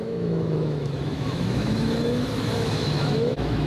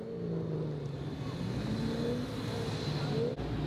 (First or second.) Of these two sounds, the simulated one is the first